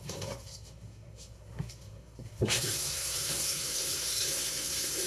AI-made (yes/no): yes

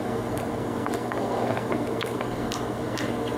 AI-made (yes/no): yes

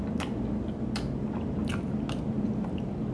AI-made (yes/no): no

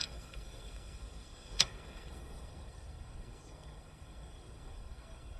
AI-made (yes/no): yes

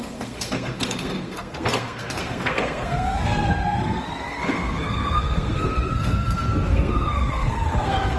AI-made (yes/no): yes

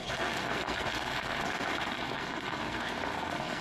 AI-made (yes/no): yes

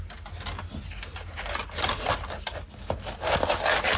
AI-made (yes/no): no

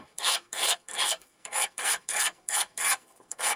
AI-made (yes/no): yes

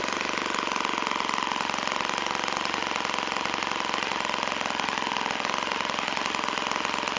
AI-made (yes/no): no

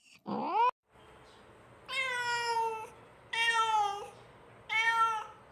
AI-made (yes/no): no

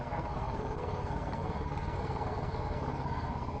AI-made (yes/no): yes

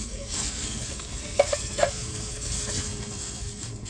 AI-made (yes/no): yes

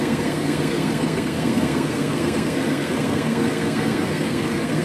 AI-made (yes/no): yes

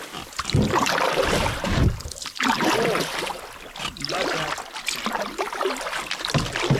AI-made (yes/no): no